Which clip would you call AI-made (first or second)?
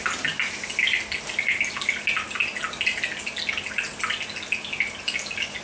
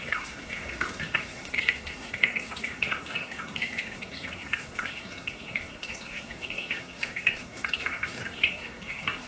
second